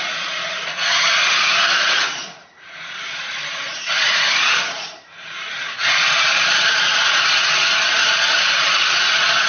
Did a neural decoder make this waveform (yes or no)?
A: yes